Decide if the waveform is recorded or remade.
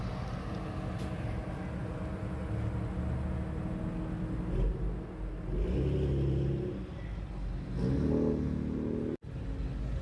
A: recorded